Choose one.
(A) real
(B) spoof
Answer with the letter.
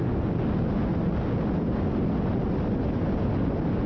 A